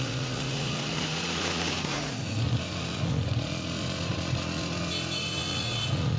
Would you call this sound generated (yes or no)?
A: yes